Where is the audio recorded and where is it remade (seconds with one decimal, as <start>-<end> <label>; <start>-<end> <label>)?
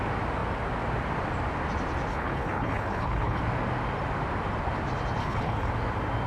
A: 0.0-2.1 recorded; 2.1-3.4 remade; 3.4-5.2 recorded; 5.2-5.7 remade; 5.7-6.3 recorded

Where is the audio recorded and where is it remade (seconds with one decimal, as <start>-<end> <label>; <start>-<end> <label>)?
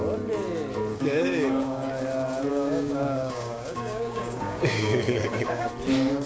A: 0.0-0.9 recorded; 0.9-1.9 remade; 1.9-2.5 recorded; 2.5-5.7 remade; 5.7-6.3 recorded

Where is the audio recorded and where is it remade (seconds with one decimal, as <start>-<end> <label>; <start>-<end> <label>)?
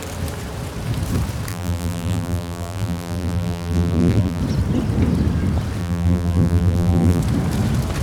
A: 0.0-1.5 recorded; 1.5-4.4 remade; 4.4-5.8 recorded; 5.8-7.2 remade; 7.2-8.0 recorded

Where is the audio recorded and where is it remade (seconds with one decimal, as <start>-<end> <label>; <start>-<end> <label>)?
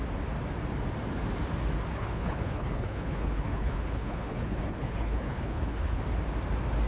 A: 0.0-1.9 recorded; 1.9-6.0 remade; 6.0-6.9 recorded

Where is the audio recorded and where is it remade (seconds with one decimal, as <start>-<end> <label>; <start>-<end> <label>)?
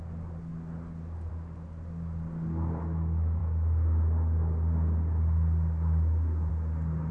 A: 0.0-7.1 recorded